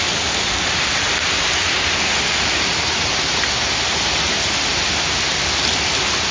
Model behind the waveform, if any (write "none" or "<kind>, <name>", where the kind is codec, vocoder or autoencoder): none